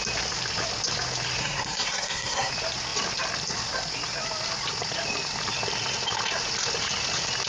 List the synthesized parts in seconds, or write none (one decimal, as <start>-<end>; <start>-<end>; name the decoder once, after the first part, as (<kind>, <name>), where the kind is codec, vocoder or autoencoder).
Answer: 1.4-2.5 (codec, SNAC)